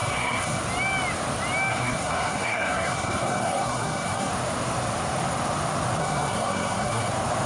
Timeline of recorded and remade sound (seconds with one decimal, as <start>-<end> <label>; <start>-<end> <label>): 0.0-0.6 remade; 0.6-1.7 recorded; 1.7-4.3 remade; 4.3-6.0 recorded; 6.0-7.1 remade; 7.1-7.5 recorded